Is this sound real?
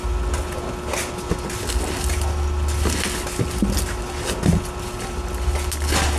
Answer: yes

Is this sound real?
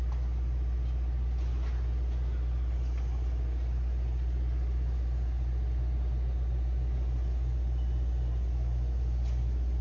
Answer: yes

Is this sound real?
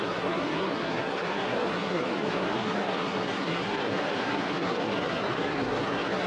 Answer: no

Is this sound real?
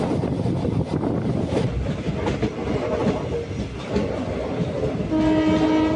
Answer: yes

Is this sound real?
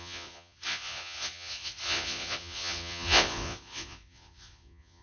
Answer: no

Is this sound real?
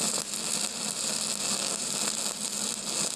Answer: yes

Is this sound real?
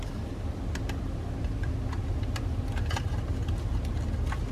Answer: yes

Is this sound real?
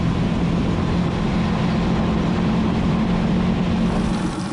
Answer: yes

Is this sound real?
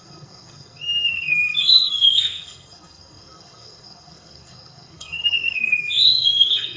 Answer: no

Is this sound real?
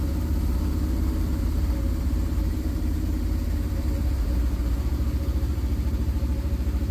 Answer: no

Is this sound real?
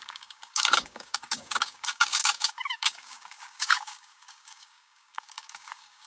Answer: no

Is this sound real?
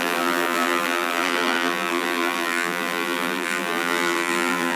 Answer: no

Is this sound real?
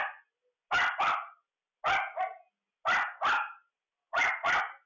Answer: yes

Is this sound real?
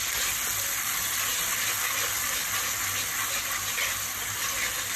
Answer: yes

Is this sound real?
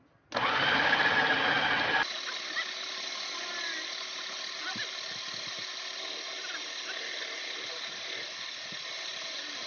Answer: yes